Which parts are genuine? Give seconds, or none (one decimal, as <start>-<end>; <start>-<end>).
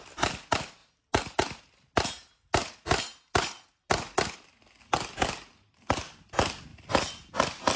0.0-7.8